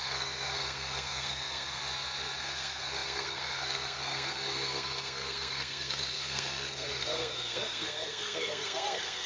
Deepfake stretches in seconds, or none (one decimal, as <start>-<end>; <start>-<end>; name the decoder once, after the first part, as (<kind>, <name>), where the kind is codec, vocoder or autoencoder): 0.0-1.8 (codec, SNAC); 2.4-9.3